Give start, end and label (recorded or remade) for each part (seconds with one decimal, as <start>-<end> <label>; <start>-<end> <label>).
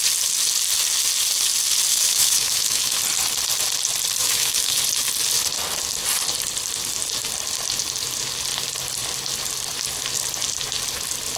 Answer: 0.0-1.9 recorded; 1.9-3.0 remade; 3.0-4.2 recorded; 4.2-4.8 remade; 4.8-11.4 recorded